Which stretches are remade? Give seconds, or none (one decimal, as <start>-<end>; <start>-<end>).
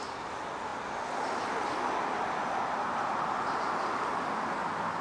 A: none